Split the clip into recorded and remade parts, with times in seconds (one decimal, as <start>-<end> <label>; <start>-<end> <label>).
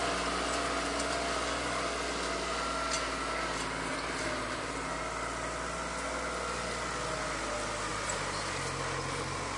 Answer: 0.0-3.9 recorded; 3.9-5.0 remade; 5.0-7.9 recorded; 7.9-8.4 remade; 8.4-9.6 recorded